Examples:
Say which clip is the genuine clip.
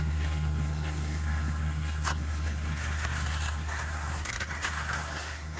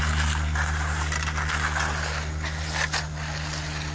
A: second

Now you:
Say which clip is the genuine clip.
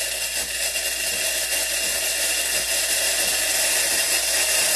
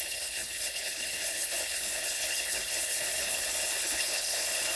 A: first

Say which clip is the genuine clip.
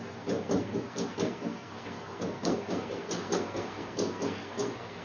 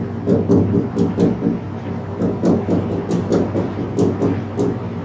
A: second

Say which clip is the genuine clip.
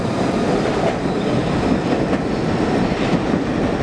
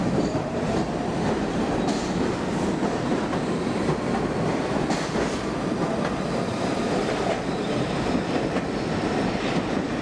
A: first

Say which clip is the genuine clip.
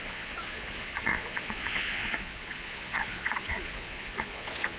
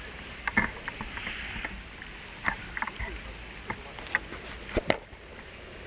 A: second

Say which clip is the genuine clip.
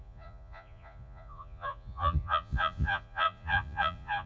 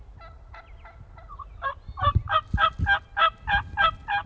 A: second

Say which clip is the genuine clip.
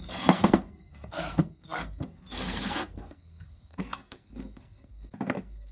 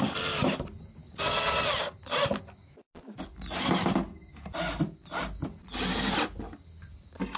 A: second